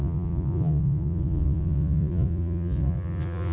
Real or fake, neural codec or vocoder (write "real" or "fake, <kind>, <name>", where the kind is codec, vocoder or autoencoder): fake, vocoder, Vocos